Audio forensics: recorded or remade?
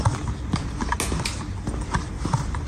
recorded